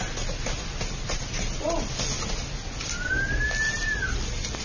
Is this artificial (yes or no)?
no